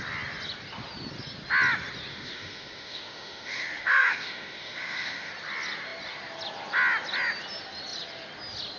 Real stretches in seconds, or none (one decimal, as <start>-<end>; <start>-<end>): 0.0-2.1; 5.3-8.8